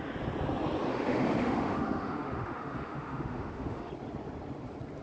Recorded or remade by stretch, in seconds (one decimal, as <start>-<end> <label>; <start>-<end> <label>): 0.0-0.9 recorded; 0.9-3.9 remade; 3.9-5.0 recorded

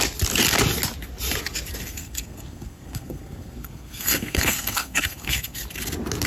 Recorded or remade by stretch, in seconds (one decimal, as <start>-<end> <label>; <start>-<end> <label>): 0.0-1.8 recorded; 1.8-5.6 remade; 5.6-6.3 recorded